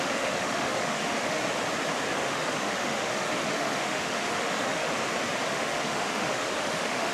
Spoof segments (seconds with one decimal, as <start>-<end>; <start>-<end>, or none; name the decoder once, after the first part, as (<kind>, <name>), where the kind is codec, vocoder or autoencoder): 0.0-1.4 (autoencoder, DAC-VAE); 2.1-4.9; 5.5-7.1